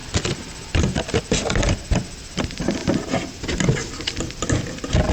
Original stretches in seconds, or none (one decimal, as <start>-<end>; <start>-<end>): 0.0-5.1